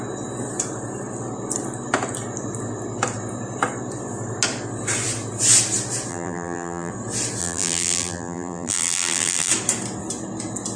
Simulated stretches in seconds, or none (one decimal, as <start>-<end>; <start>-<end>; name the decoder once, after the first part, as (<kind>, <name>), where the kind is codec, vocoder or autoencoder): 6.1-6.9 (vocoder, BigVGAN v2); 7.4-9.5